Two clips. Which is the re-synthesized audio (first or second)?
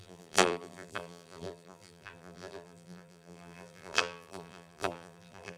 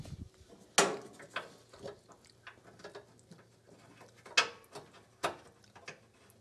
first